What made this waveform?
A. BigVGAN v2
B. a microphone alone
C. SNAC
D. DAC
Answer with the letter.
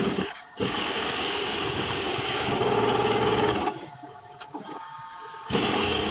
D